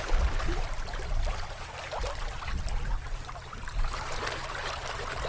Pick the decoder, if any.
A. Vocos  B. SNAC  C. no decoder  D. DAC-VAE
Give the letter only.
C